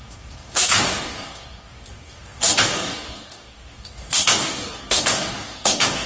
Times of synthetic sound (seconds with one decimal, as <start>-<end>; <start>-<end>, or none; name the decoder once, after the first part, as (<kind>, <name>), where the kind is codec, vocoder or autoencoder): 0.0-6.1 (codec, DAC)